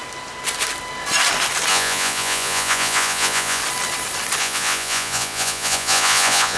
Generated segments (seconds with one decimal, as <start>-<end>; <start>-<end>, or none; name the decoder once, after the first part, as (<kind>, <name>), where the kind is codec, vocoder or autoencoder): 1.7-3.6 (vocoder, Vocos); 4.4-6.6